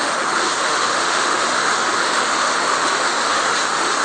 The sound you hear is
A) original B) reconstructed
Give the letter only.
B